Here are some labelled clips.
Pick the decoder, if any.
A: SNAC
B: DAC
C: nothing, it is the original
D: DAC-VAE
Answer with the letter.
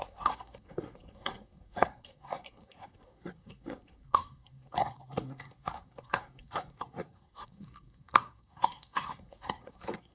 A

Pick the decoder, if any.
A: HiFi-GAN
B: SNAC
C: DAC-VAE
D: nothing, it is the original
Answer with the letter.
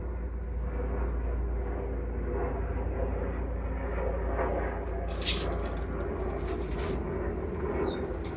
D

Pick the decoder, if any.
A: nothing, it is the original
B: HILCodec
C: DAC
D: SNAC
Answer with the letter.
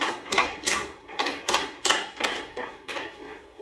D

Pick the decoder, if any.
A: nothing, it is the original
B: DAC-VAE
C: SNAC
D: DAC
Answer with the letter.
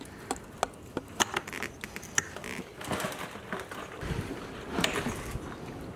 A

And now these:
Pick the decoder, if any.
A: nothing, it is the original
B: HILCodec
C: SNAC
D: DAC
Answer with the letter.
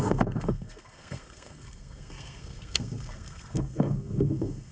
C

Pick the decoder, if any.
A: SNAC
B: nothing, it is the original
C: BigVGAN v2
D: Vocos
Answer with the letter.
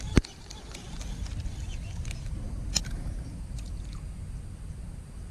B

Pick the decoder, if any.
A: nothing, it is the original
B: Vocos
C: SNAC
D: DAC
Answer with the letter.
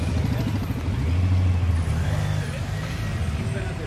A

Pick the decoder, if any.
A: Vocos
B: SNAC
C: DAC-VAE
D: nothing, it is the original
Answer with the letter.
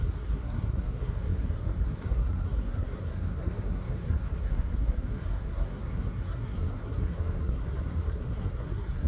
B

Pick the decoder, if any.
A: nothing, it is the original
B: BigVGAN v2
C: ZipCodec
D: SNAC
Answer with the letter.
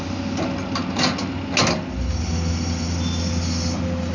A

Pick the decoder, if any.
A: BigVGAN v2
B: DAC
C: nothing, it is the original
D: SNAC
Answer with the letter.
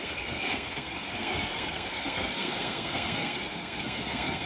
D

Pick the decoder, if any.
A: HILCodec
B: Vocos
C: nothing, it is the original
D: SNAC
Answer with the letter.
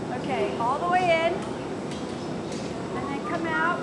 C